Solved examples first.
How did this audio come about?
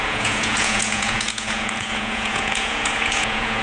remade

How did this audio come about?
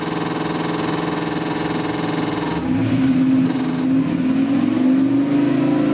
recorded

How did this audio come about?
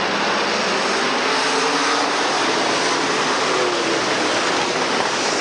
recorded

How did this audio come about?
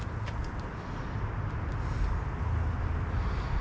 recorded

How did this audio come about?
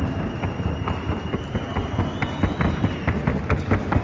recorded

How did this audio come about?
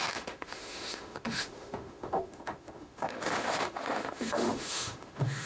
remade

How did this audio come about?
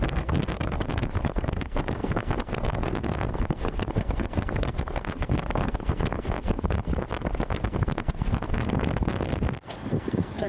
remade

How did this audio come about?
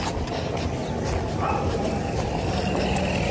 recorded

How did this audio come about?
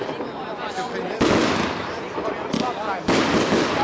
recorded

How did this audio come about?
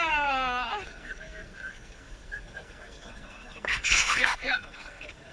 remade